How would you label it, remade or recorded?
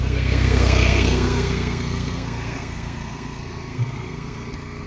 remade